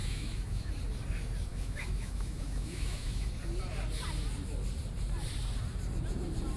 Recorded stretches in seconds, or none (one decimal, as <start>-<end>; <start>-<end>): 0.7-1.5; 3.3-6.6